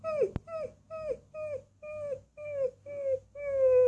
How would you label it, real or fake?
real